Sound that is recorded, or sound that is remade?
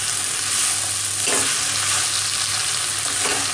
recorded